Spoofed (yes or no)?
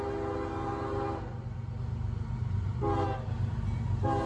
no